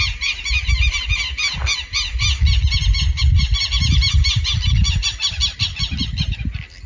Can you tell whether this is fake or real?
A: real